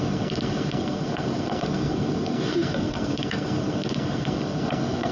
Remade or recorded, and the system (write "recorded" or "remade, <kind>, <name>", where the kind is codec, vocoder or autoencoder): remade, codec, SNAC